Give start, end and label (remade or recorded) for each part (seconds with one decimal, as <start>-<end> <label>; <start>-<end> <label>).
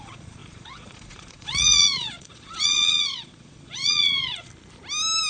0.0-4.5 remade; 4.5-5.3 recorded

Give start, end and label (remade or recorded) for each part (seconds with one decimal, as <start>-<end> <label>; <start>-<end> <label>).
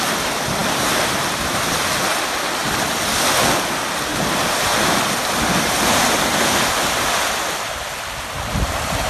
0.0-9.1 recorded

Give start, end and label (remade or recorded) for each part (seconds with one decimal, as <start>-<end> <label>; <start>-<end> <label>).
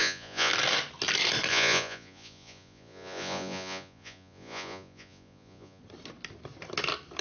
0.0-0.5 remade; 0.5-1.5 recorded; 1.5-5.8 remade; 5.8-7.2 recorded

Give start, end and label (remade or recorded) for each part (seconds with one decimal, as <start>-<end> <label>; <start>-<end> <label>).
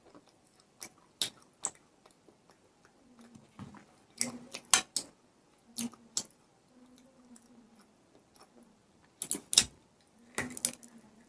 0.0-11.3 recorded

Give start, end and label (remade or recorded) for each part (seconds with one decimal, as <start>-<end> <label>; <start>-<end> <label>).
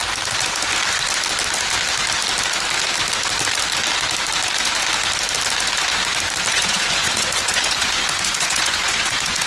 0.0-6.5 recorded; 6.5-9.5 remade